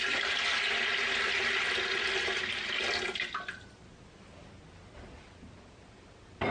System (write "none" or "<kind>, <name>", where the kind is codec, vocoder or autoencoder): none